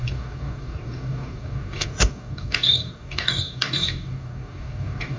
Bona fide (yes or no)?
no